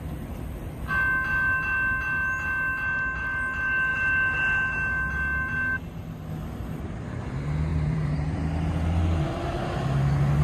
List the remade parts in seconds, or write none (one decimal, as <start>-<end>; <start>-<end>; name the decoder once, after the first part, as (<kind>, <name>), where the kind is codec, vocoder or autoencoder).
7.7-8.4 (vocoder, BigVGAN v2)